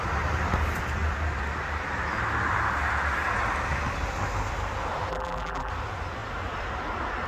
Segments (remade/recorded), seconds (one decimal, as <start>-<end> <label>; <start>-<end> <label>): 0.0-5.1 recorded; 5.1-5.7 remade; 5.7-7.3 recorded